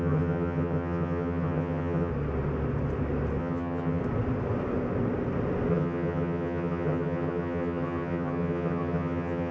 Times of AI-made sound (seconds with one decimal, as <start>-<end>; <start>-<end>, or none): 0.0-2.1; 3.4-4.0; 5.7-9.5